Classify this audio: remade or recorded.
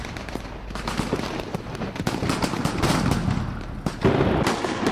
recorded